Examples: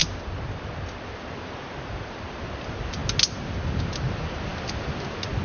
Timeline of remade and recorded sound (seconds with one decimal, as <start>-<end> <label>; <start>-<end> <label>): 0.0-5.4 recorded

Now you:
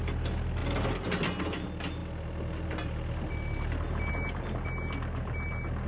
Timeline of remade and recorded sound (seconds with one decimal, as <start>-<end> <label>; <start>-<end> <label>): 0.0-5.9 recorded

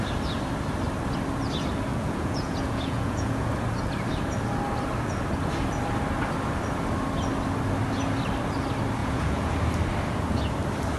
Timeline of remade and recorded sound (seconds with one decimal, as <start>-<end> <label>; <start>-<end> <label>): 0.0-1.9 recorded; 1.9-3.5 remade; 3.5-9.0 recorded; 9.0-9.5 remade; 9.5-11.0 recorded